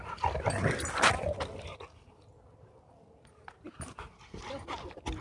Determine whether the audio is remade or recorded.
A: recorded